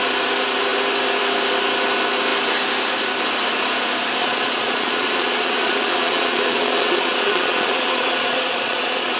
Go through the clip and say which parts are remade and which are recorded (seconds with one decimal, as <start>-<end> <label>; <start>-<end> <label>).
0.0-4.2 recorded; 4.2-9.2 remade